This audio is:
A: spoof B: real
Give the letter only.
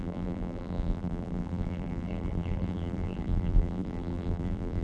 A